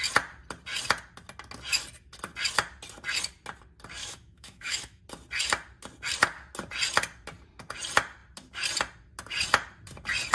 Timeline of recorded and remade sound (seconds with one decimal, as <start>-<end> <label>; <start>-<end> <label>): 0.0-4.0 recorded; 4.0-5.0 remade; 5.0-10.3 recorded